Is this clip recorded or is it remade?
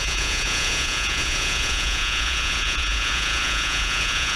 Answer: remade